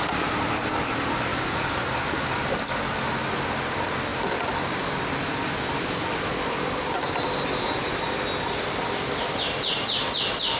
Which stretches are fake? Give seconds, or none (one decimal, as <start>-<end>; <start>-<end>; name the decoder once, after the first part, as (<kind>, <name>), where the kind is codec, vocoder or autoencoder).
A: none